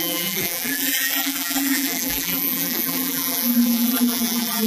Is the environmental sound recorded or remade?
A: remade